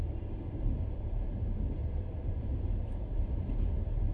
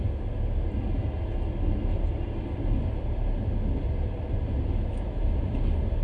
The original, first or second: second